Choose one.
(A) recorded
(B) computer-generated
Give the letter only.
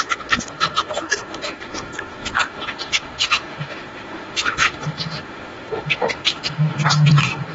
B